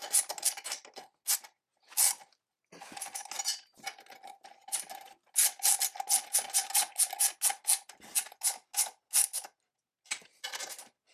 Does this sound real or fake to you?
real